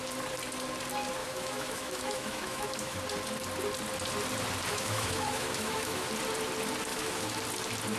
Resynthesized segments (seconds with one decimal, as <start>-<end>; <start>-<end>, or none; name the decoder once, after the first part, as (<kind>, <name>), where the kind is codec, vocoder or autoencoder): 1.2-3.0 (autoencoder, DAC-VAE); 4.7-6.1; 6.9-7.4